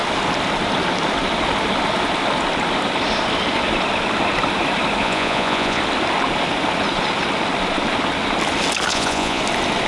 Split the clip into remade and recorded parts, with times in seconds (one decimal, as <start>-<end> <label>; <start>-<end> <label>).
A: 0.0-5.0 recorded; 5.0-5.8 remade; 5.8-8.9 recorded; 8.9-9.4 remade; 9.4-9.9 recorded

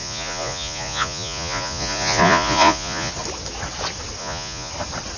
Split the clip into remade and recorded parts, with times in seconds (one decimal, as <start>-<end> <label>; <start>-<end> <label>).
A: 0.0-3.1 remade; 3.1-4.2 recorded; 4.2-4.7 remade; 4.7-5.2 recorded